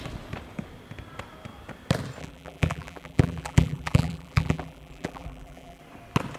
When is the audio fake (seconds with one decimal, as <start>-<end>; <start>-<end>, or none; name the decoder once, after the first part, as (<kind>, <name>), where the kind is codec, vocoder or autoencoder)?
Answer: 2.2-5.8 (vocoder, BigVGAN v2)